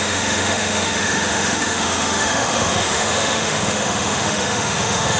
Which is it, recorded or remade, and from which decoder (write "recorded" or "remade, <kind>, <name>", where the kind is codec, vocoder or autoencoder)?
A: remade, autoencoder, DAC-VAE